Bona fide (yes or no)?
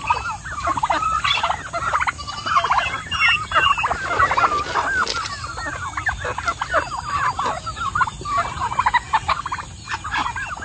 yes